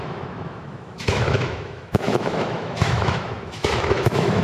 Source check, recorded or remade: remade